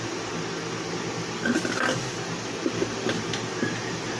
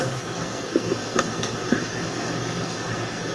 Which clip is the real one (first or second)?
first